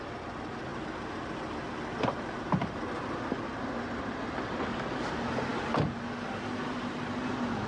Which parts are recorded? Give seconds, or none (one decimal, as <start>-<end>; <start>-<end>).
0.0-7.7